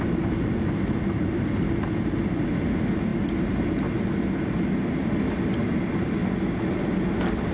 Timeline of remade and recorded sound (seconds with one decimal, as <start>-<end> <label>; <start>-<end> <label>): 0.0-7.5 recorded